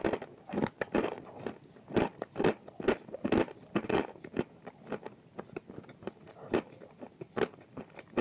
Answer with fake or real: real